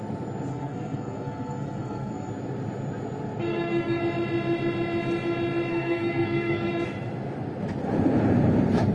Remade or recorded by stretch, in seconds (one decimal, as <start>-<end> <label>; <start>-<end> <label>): 0.0-0.5 recorded; 0.5-2.3 remade; 2.3-3.5 recorded; 3.5-4.0 remade; 4.0-5.7 recorded; 5.7-6.7 remade; 6.7-8.9 recorded